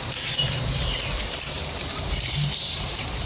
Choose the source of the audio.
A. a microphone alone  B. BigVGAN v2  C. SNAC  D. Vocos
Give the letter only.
B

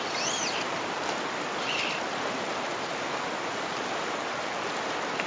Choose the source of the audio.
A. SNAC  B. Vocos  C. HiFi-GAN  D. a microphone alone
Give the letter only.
D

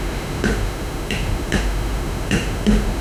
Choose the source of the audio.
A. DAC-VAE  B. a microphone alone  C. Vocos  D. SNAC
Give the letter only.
A